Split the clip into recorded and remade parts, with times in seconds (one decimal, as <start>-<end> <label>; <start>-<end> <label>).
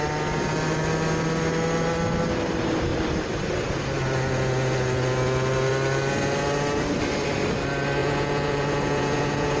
0.0-8.0 recorded; 8.0-9.6 remade